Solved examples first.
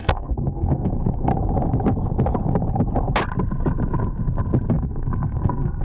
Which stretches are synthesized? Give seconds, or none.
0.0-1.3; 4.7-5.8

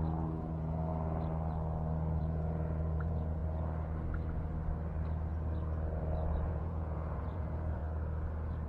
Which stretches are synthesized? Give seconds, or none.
0.0-0.9; 2.2-3.4; 6.3-7.8